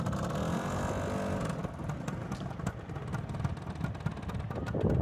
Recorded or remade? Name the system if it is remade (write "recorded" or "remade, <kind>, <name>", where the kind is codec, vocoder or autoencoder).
recorded